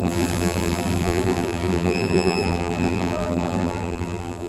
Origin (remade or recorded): remade